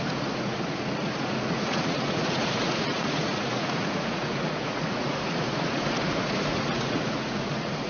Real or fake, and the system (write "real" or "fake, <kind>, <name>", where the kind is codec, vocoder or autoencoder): fake, vocoder, Vocos